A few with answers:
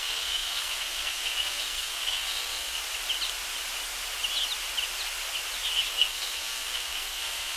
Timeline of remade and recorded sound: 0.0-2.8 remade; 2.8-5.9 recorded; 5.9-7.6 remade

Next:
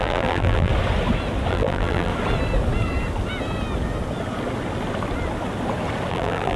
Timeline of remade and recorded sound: 0.0-0.7 remade; 0.7-1.5 recorded; 1.5-2.1 remade; 2.1-6.1 recorded; 6.1-6.6 remade

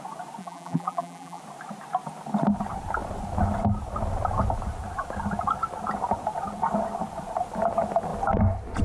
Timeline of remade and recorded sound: 0.0-0.4 recorded; 0.4-1.4 remade; 1.4-8.8 recorded

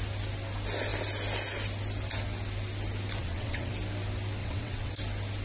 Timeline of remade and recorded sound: 0.0-3.2 recorded; 3.2-3.7 remade; 3.7-4.4 recorded; 4.4-4.9 remade; 4.9-5.4 recorded